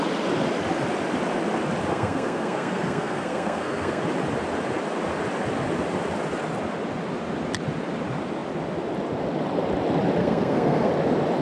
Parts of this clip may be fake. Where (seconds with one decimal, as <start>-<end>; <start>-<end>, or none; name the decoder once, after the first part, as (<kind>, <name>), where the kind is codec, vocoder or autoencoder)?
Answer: 1.9-4.0 (codec, SNAC); 10.2-10.9